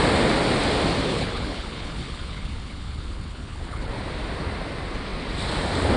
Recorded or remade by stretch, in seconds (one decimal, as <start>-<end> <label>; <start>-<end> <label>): 0.0-1.1 recorded; 1.1-3.9 remade; 3.9-6.0 recorded